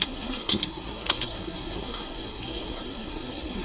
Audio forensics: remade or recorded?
remade